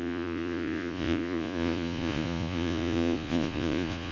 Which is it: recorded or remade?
remade